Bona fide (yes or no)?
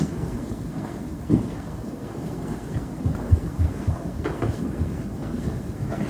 no